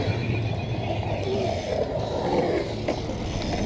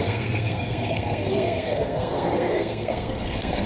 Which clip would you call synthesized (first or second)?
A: second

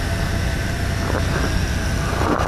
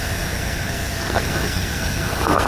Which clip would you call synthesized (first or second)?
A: second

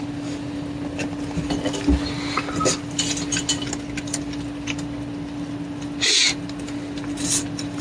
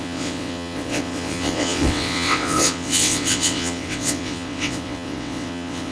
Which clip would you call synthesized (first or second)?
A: second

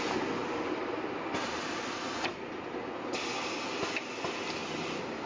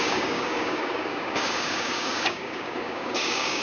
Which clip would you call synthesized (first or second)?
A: second